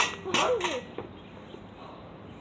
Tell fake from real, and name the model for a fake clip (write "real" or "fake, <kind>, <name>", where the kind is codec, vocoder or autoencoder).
real